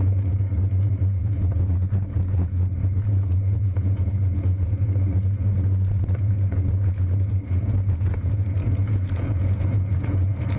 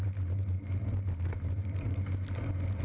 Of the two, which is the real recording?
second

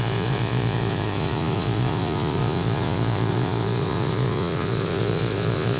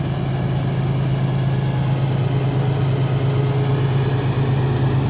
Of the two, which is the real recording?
second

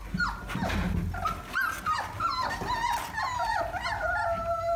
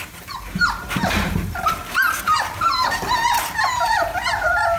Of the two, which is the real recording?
first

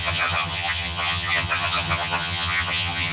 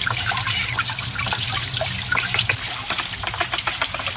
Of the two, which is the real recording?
second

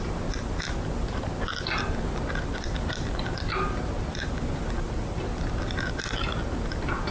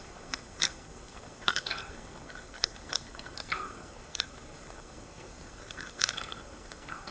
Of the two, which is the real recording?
first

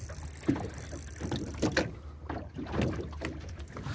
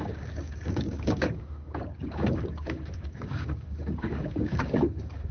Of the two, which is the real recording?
first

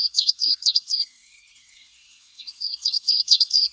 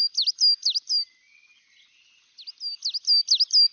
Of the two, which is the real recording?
second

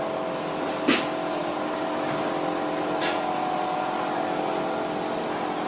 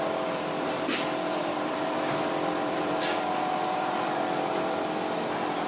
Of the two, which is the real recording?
first